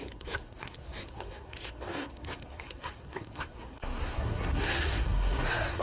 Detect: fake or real fake